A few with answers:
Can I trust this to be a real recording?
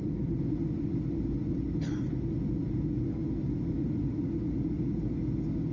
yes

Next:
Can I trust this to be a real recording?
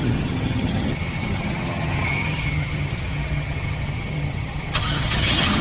no